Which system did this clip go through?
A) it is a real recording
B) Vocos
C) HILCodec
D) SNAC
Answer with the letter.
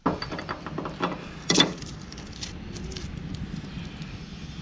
A